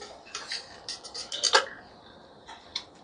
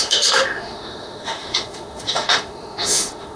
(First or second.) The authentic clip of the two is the first